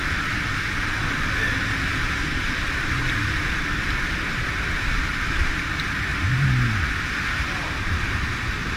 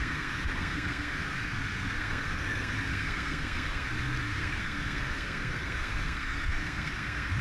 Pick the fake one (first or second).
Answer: second